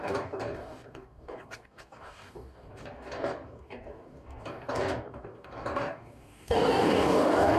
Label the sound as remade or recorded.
remade